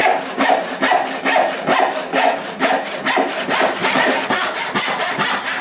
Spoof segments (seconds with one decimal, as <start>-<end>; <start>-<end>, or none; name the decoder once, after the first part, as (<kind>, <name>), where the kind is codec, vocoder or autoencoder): 0.0-0.5 (codec, DAC); 2.1-2.7